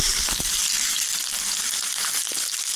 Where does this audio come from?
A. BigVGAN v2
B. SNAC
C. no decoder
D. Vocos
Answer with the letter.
C